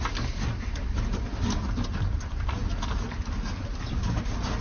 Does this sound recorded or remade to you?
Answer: recorded